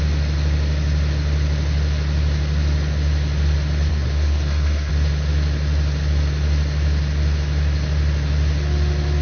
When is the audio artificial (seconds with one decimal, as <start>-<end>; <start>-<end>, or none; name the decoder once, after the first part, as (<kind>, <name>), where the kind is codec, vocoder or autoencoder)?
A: 3.9-4.9 (codec, SNAC)